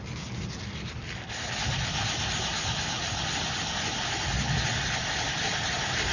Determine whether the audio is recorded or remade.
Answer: recorded